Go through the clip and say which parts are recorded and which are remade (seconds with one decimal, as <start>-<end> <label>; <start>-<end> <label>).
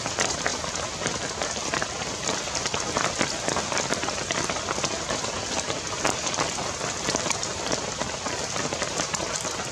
0.0-9.7 recorded